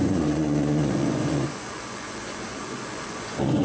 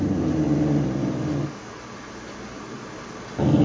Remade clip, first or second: first